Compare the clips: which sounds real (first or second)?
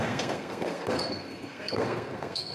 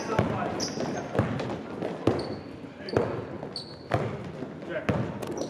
second